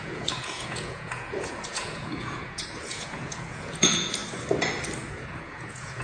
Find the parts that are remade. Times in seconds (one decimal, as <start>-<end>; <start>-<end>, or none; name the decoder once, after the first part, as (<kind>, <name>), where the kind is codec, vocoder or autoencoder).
0.0-4.2 (vocoder, Vocos); 5.1-6.0